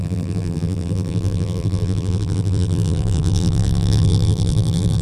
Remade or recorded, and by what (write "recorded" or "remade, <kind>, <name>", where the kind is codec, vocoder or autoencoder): remade, vocoder, BigVGAN v2